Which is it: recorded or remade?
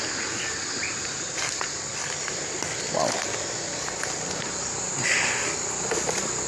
recorded